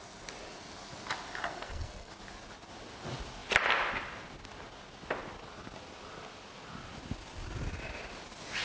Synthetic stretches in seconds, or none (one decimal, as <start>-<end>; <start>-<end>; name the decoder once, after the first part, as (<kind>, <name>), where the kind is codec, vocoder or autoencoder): 1.5-2.1 (codec, SNAC)

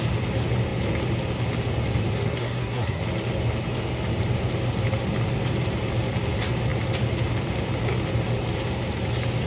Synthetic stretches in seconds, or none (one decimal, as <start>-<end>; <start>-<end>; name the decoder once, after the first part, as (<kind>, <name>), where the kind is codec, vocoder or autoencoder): 2.1-3.0 (codec, SNAC)